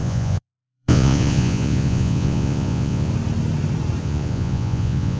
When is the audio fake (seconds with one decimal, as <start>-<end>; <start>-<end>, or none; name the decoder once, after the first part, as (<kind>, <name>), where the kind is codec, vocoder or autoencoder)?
0.0-3.1 (vocoder, Vocos); 4.0-5.2